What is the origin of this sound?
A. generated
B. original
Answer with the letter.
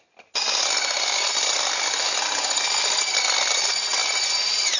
B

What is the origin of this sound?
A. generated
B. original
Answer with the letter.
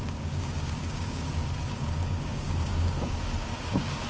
A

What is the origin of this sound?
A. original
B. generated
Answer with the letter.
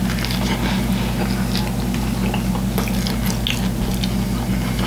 A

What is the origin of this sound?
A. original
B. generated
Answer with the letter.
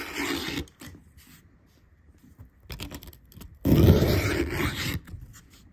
A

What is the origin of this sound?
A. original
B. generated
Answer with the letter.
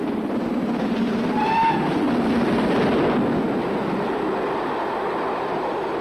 A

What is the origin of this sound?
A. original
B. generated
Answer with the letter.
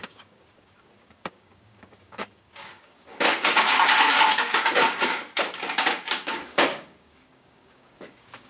B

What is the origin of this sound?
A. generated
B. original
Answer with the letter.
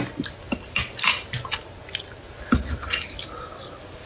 B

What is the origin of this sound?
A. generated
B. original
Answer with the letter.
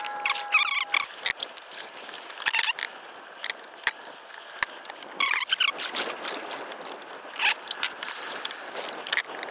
B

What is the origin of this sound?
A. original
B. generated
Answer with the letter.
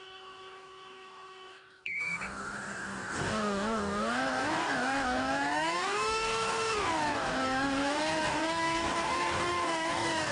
B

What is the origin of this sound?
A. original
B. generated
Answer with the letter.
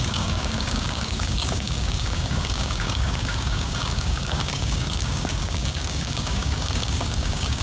B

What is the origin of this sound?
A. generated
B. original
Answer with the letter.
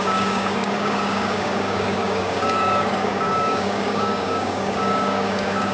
A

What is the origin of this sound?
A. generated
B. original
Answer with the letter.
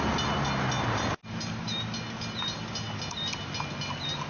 B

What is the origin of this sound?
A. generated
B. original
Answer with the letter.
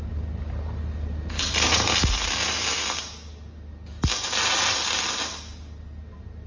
B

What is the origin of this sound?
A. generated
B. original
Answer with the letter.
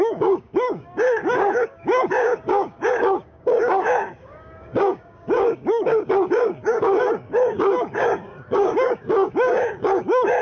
A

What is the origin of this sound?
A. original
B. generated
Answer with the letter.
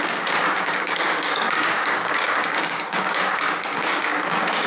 B